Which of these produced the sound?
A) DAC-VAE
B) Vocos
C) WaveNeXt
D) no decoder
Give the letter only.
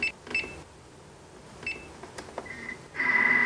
D